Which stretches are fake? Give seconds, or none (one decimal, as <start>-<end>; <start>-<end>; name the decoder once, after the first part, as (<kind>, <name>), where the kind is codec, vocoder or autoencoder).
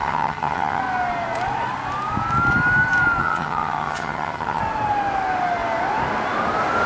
0.0-0.8 (vocoder, HiFi-GAN); 3.2-4.6